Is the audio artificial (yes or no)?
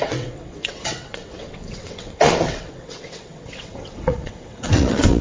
yes